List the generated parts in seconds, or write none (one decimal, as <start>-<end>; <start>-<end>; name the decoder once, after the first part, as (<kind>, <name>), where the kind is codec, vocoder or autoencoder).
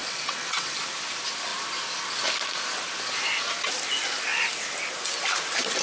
0.0-0.8 (vocoder, WaveNeXt)